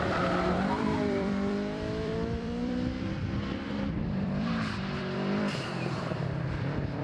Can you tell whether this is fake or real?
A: fake